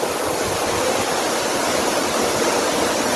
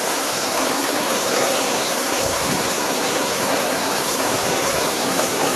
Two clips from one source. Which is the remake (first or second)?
second